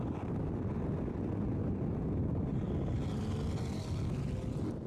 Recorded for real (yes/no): yes